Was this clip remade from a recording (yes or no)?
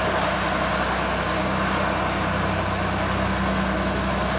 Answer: no